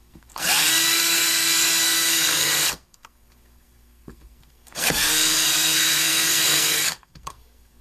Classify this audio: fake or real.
fake